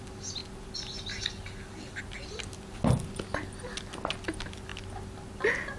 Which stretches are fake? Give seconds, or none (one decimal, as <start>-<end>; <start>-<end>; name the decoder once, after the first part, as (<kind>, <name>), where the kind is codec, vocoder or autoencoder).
none